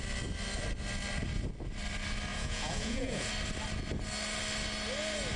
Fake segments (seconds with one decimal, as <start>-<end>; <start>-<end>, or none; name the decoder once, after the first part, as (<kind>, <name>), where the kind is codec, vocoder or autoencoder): 2.3-3.3 (vocoder, Vocos)